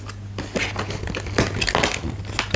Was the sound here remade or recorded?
recorded